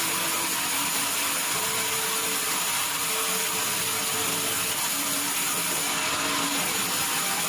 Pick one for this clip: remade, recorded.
recorded